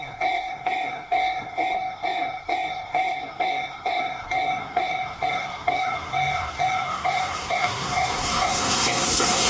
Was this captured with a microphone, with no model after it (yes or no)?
no